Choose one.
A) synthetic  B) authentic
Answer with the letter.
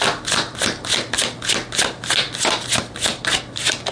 B